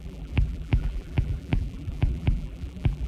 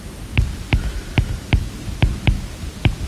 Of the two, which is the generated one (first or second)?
first